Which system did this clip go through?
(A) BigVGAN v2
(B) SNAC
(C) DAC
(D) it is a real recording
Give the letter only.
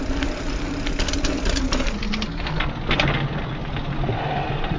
D